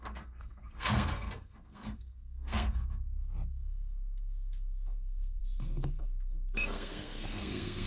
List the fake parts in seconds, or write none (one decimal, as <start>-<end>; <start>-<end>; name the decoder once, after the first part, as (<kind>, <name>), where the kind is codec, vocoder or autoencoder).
0.0-7.9 (codec, SNAC)